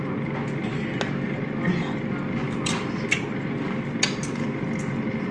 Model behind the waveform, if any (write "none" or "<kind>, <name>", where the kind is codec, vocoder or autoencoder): none